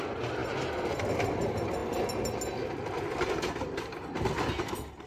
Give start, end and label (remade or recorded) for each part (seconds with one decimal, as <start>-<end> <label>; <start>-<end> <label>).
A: 0.0-0.4 recorded; 0.4-1.0 remade; 1.0-5.1 recorded